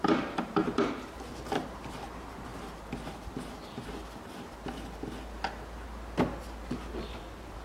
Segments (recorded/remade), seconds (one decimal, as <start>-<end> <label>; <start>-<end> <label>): 0.0-2.5 remade; 2.5-7.0 recorded; 7.0-7.6 remade